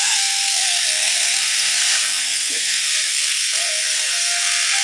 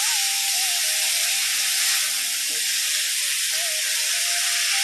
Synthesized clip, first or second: first